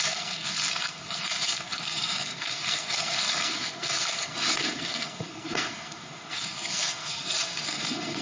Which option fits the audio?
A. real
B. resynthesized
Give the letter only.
B